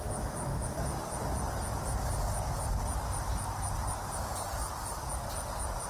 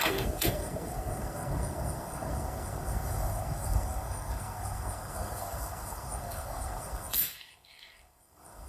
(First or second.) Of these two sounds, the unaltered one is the first